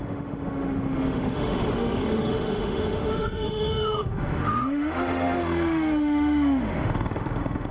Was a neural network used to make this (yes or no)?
yes